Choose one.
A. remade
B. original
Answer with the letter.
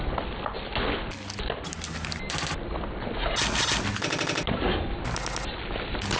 B